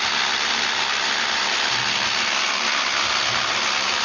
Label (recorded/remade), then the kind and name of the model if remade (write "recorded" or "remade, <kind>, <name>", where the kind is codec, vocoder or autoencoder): recorded